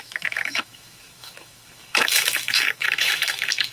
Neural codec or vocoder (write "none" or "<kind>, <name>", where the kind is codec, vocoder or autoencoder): autoencoder, DAC-VAE